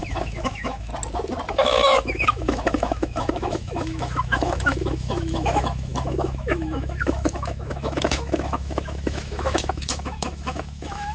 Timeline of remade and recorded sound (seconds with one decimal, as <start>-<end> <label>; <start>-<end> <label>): 0.0-0.9 remade; 0.9-1.5 recorded; 1.5-11.1 remade